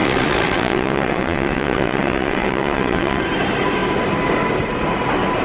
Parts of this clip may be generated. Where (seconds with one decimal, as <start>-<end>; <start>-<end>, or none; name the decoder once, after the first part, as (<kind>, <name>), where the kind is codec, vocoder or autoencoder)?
0.0-3.2 (vocoder, WaveNeXt)